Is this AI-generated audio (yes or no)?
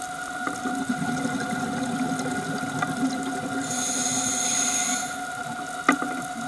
no